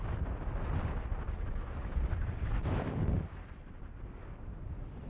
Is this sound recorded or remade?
recorded